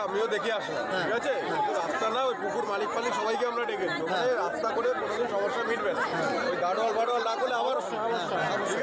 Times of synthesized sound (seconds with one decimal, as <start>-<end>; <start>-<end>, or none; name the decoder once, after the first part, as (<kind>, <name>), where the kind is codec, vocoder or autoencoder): 6.1-7.8 (vocoder, BigVGAN v2)